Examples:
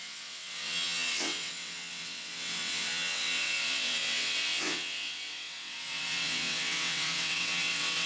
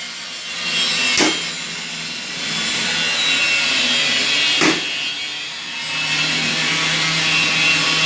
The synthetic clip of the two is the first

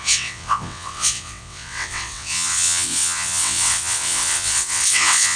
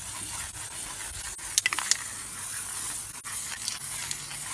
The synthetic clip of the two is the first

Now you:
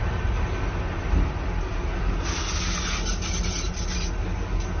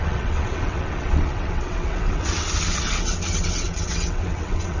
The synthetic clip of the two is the second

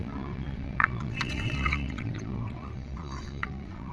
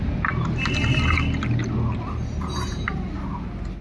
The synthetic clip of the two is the first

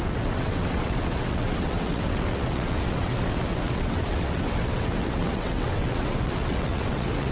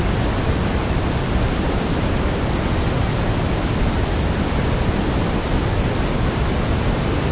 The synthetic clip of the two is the first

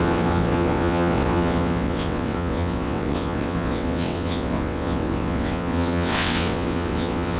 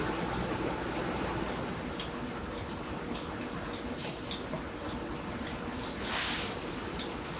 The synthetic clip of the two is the first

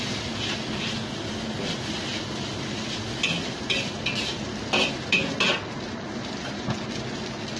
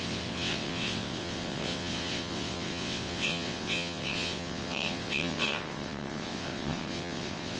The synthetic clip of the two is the second